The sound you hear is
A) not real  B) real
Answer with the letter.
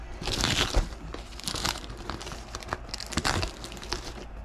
B